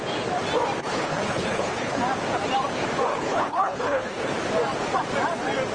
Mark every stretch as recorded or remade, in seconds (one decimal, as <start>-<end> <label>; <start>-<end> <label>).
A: 0.0-0.8 recorded; 0.8-2.0 remade; 2.0-3.1 recorded; 3.1-4.3 remade; 4.3-5.7 recorded